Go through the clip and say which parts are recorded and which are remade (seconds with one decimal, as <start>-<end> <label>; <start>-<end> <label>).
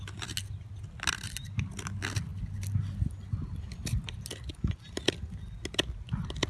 0.0-6.5 recorded